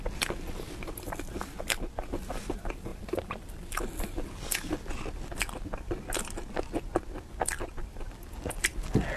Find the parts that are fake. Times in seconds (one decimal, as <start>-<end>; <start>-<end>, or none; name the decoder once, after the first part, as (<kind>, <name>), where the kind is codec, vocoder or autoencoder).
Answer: 2.9-3.8 (vocoder, BigVGAN v2)